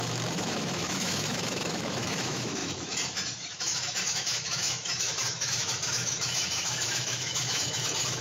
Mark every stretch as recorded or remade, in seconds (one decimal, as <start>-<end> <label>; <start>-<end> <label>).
0.0-8.2 remade